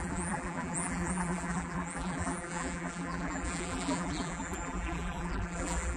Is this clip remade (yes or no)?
yes